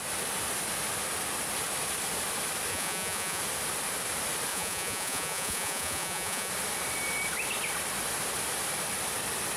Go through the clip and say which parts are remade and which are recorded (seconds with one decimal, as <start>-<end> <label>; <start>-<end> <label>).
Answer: 0.0-2.7 recorded; 2.7-3.4 remade; 3.4-4.5 recorded; 4.5-6.5 remade; 6.5-9.6 recorded